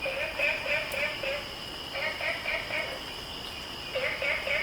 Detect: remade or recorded recorded